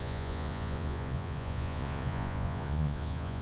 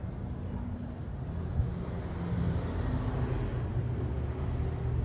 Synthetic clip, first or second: first